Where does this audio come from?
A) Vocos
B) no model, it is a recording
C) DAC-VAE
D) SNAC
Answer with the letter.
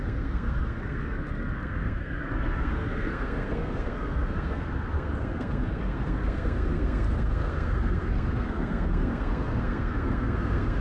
D